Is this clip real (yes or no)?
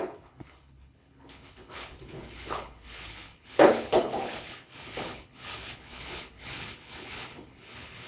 no